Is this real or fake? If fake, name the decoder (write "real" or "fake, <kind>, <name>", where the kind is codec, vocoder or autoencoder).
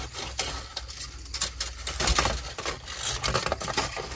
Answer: real